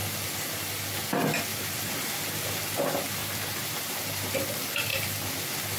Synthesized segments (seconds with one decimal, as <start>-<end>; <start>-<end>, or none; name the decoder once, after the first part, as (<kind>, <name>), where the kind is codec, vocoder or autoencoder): 1.5-2.8 (vocoder, BigVGAN v2); 3.2-3.8